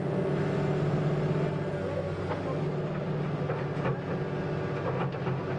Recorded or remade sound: recorded